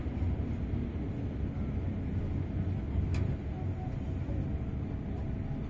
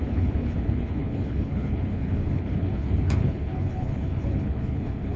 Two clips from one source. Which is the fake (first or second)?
second